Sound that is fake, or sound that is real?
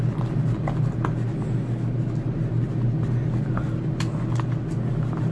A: fake